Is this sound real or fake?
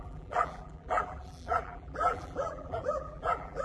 fake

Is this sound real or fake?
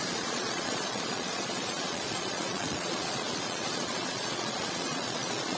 fake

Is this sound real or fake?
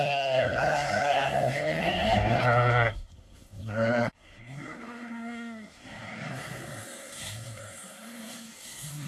fake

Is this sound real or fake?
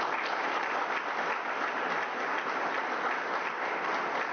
real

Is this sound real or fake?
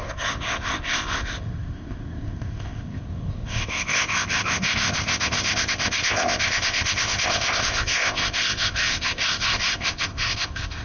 fake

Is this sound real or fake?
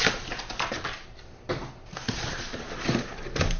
real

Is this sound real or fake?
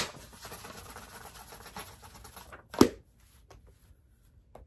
real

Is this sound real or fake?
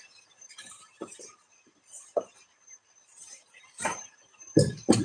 fake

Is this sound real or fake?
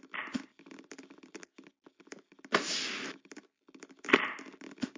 real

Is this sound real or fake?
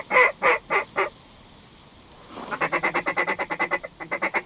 real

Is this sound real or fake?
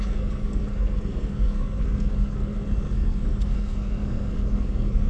fake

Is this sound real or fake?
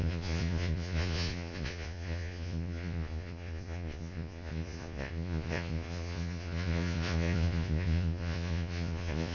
fake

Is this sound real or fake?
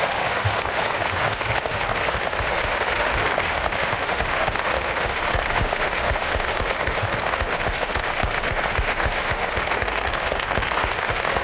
fake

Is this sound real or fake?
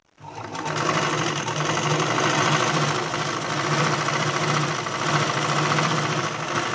real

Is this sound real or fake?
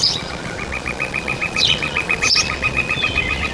fake